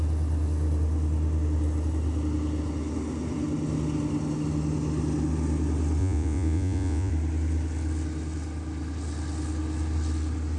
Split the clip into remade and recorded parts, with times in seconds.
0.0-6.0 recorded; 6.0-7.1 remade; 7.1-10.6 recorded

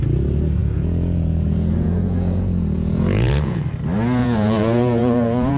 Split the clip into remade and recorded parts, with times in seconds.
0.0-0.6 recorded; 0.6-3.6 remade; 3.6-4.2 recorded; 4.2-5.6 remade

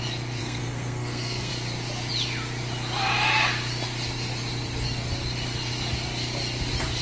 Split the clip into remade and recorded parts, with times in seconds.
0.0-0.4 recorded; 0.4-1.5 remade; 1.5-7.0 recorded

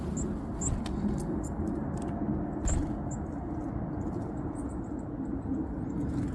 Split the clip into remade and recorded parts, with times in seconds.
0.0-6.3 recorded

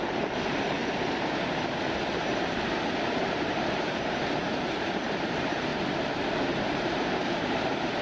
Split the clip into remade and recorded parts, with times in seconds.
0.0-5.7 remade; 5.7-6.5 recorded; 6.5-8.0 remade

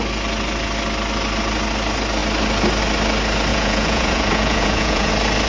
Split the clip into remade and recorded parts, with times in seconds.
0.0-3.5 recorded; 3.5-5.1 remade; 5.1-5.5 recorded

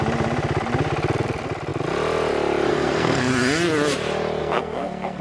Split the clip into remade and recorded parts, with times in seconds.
0.0-2.7 recorded; 2.7-3.3 remade; 3.3-4.4 recorded; 4.4-5.2 remade